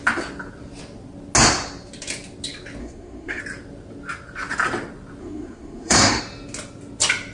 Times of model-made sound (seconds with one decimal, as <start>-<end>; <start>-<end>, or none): 2.8-3.4; 5.2-6.2

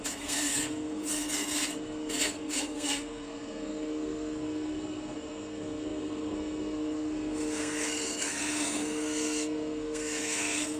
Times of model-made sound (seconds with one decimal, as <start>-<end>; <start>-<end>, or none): 0.0-10.8